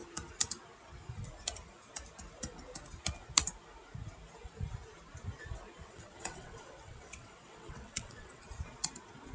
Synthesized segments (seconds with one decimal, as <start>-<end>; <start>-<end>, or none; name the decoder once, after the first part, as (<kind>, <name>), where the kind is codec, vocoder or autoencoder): 5.8-8.4 (vocoder, WaveNeXt)